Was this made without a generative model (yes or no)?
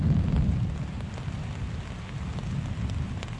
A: yes